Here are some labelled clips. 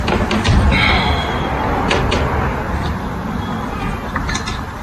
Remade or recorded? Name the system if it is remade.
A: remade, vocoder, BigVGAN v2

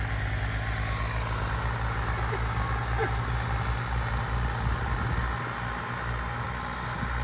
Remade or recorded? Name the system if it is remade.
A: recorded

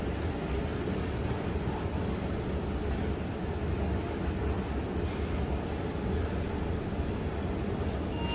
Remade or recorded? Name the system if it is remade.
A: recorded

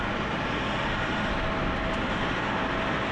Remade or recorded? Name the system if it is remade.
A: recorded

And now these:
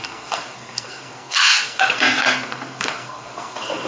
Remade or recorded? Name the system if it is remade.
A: remade, codec, SNAC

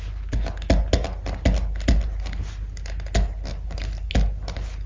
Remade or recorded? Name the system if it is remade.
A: recorded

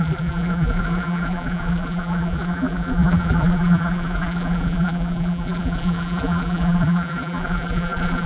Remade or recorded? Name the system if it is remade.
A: remade, vocoder, BigVGAN v2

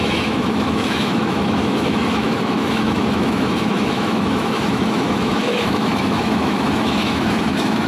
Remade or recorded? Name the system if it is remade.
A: remade, autoencoder, DAC-VAE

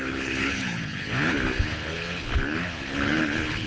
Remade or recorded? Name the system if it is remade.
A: remade, codec, HILCodec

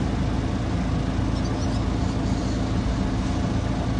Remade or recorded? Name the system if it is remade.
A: recorded